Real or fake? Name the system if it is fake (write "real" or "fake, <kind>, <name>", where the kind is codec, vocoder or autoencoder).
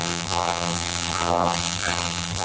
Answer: fake, vocoder, BigVGAN v2